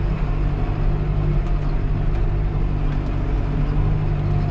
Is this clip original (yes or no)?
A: yes